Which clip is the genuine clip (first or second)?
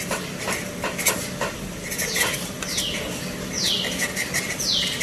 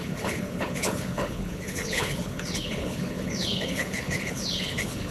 first